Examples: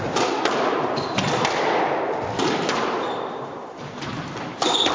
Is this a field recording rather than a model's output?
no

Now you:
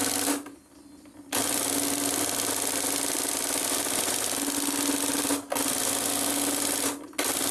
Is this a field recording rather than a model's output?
yes